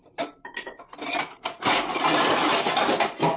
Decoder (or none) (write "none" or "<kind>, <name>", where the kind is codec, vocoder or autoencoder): none